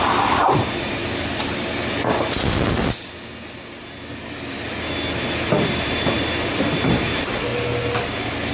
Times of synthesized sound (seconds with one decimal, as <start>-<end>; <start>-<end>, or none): 0.0-1.0; 5.5-7.5